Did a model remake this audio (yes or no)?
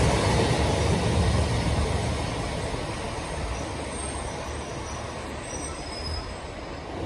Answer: no